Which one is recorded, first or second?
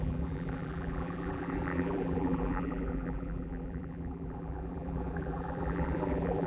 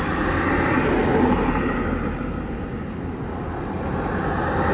second